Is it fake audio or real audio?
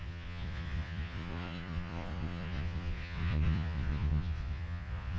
fake